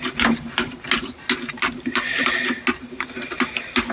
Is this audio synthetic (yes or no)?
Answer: no